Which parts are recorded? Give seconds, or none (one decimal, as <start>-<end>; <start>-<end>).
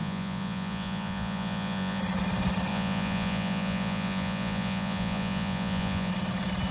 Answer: 2.0-2.7; 6.1-6.7